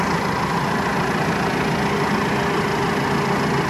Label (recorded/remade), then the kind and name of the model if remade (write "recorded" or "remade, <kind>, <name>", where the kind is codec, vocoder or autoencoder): recorded